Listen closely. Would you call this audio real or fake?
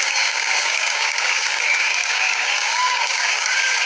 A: fake